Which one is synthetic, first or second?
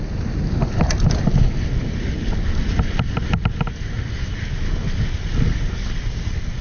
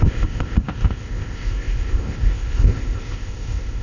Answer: second